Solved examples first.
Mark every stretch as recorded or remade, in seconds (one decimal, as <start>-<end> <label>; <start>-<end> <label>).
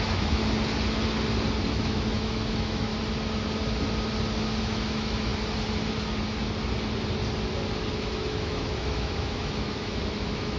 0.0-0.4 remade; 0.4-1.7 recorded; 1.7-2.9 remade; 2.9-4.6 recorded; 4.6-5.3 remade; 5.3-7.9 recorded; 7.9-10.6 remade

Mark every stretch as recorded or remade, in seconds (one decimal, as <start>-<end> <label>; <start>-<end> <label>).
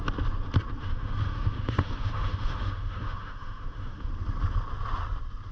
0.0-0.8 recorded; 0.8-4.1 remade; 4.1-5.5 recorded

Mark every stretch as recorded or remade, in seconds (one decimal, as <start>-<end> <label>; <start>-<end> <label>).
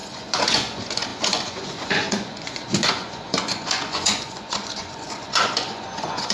0.0-6.3 remade